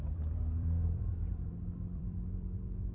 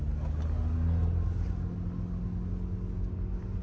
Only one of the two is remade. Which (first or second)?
first